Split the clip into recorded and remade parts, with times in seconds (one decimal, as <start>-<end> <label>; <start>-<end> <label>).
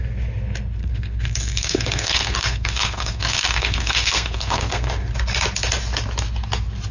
0.0-0.8 recorded; 0.8-4.9 remade; 4.9-6.9 recorded